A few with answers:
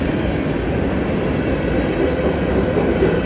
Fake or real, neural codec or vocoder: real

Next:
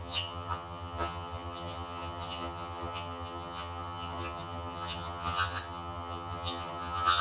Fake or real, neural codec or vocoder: fake, vocoder, HiFi-GAN